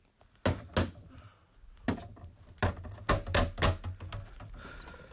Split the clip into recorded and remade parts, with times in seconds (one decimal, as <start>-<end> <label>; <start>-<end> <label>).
0.0-5.1 recorded